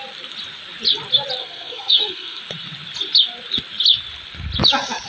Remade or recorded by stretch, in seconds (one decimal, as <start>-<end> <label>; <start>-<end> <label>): 0.0-1.4 recorded; 1.4-2.4 remade; 2.4-5.1 recorded